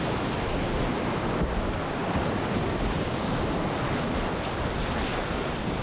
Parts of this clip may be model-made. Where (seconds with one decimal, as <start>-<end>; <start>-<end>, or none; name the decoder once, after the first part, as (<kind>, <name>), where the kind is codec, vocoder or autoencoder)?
none